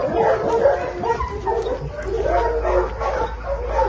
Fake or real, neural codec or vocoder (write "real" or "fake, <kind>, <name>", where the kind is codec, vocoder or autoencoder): real